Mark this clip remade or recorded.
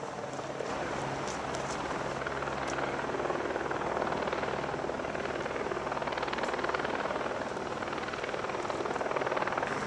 recorded